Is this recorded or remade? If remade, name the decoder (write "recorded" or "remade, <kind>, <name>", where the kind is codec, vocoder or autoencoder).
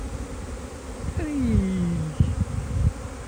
recorded